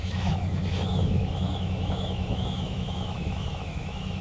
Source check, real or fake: fake